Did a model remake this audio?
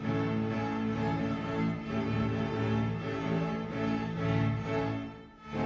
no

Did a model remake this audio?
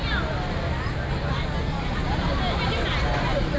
no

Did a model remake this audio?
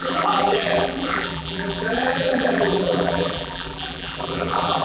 yes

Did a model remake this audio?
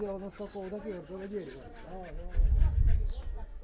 no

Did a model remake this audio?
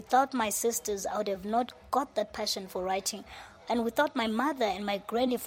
yes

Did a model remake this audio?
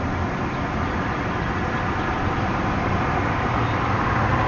no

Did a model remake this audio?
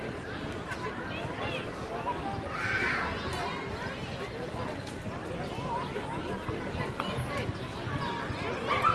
no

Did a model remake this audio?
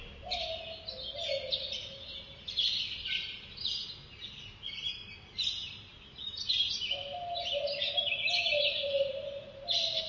no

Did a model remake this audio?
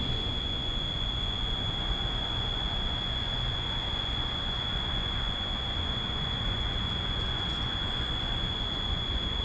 yes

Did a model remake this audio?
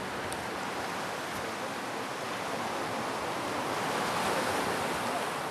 no